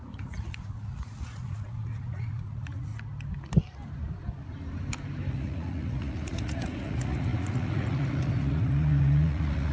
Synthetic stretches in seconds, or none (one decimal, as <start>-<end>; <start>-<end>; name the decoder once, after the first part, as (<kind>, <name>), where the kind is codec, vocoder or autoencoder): 0.0-2.9 (vocoder, Vocos); 5.3-9.7